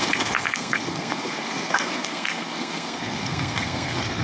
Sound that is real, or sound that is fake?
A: fake